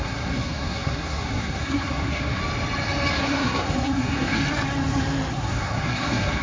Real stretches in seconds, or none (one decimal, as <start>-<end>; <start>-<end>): 2.4-3.1; 4.4-5.3